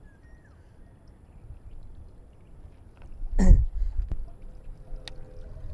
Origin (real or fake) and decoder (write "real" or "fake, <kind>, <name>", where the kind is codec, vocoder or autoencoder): real